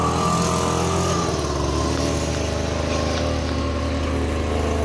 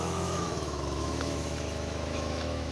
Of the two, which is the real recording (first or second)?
first